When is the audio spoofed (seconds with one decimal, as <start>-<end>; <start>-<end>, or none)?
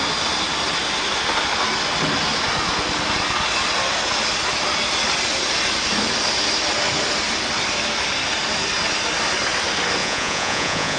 10.0-11.0